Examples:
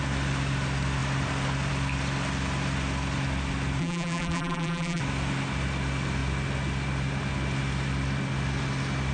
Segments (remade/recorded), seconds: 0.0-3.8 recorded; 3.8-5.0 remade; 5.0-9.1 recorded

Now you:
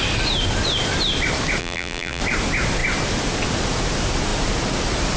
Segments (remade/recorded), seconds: 0.0-1.6 recorded; 1.6-2.2 remade; 2.2-5.2 recorded